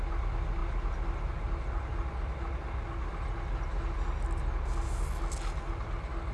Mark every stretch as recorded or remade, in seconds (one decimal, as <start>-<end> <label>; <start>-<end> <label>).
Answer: 0.0-6.3 recorded